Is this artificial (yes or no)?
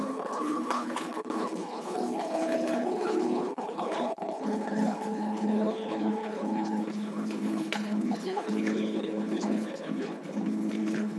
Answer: yes